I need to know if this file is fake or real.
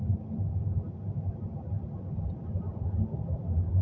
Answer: real